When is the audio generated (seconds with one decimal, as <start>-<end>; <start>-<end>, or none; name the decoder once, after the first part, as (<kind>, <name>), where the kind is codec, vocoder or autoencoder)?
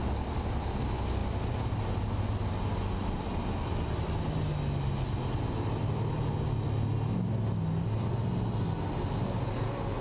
none